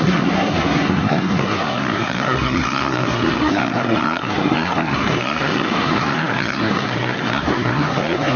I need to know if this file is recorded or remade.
remade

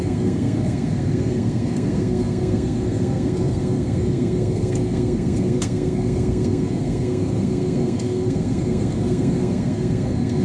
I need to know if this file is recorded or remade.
remade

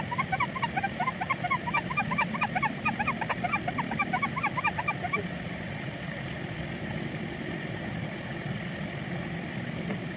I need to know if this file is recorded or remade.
recorded